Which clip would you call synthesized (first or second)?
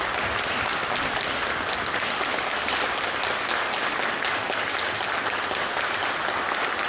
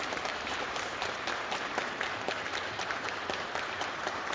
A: second